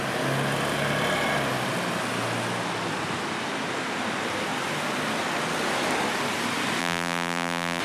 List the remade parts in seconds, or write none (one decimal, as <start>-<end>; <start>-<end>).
6.8-7.8